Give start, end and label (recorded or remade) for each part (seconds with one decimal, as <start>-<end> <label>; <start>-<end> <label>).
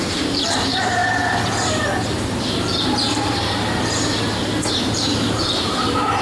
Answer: 0.0-1.0 remade; 1.0-4.7 recorded; 4.7-6.2 remade